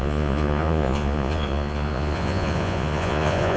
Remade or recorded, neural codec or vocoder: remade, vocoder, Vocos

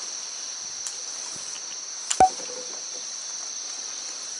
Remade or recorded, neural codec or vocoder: recorded